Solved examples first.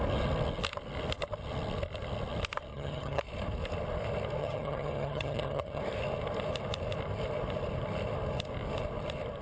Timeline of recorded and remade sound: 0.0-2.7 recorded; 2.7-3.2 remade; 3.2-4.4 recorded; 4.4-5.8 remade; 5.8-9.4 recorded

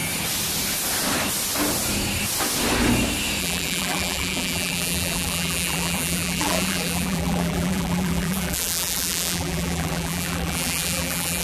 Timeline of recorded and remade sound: 0.0-3.4 recorded; 3.4-11.4 remade

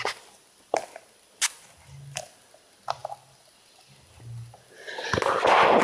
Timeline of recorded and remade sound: 0.0-5.8 recorded

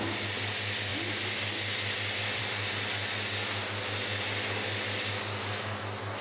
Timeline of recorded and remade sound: 0.0-6.2 recorded

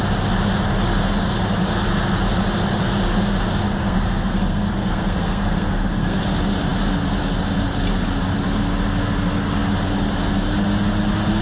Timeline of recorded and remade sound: 0.0-3.8 recorded; 3.8-6.2 remade; 6.2-11.4 recorded